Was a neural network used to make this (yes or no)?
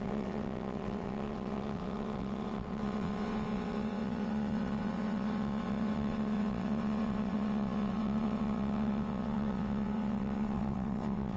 yes